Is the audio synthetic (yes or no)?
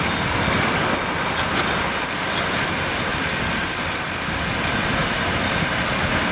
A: no